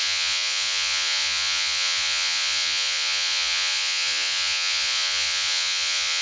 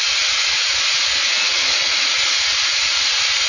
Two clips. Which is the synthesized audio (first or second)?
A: first